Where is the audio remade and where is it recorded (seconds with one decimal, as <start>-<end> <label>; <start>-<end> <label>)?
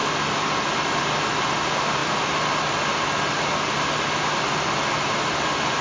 0.0-5.8 recorded